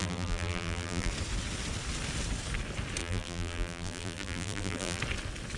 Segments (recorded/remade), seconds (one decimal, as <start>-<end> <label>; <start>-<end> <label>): 0.0-1.1 remade; 1.1-3.0 recorded; 3.0-5.0 remade; 5.0-5.6 recorded